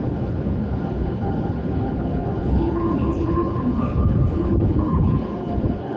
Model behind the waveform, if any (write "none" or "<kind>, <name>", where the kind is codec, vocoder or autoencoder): codec, HILCodec